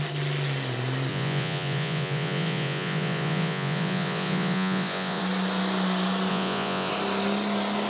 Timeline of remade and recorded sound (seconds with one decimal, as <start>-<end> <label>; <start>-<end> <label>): 0.0-1.1 recorded; 1.1-5.2 remade; 5.2-6.3 recorded; 6.3-6.9 remade; 6.9-7.9 recorded